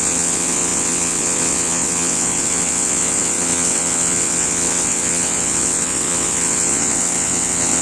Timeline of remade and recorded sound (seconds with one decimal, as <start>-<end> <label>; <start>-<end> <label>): 0.0-7.8 remade